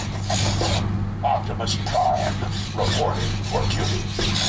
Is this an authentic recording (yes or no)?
yes